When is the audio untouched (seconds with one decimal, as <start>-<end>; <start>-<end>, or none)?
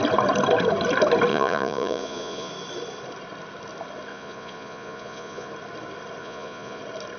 0.0-1.3; 2.5-4.1; 5.5-6.2; 6.8-7.2